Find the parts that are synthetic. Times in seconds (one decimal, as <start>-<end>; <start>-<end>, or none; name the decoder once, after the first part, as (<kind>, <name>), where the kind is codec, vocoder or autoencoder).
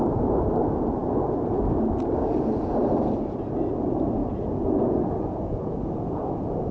4.2-6.2 (vocoder, Vocos)